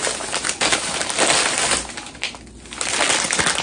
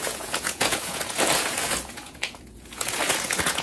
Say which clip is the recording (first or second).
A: first